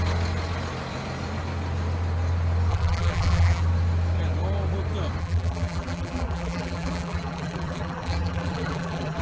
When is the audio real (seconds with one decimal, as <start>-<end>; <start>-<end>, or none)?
0.0-2.7; 3.6-5.2